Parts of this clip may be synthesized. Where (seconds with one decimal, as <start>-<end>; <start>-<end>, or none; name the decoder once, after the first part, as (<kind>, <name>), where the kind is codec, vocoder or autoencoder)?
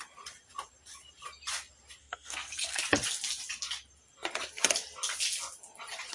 2.0-2.8 (codec, SNAC)